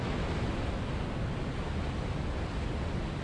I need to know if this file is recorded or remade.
recorded